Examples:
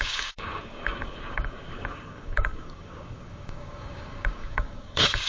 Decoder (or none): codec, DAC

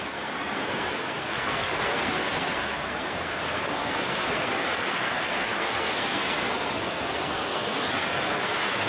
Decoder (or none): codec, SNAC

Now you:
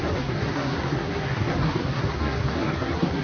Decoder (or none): codec, SNAC